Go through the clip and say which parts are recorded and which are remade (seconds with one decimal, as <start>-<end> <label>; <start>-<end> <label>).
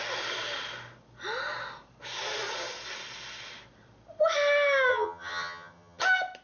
0.0-4.9 recorded; 4.9-6.0 remade; 6.0-6.4 recorded